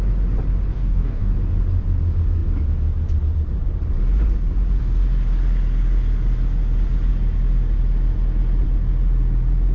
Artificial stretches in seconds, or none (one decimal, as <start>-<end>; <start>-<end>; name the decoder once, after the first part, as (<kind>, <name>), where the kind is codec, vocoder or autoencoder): 0.7-1.3 (codec, DAC)